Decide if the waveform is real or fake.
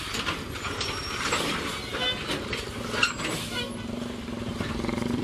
real